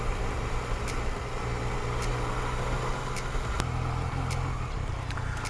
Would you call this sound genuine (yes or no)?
yes